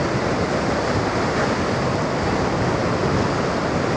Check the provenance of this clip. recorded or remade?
recorded